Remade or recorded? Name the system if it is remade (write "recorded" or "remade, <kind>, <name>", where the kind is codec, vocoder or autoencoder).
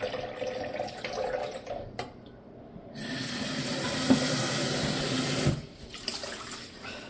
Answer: recorded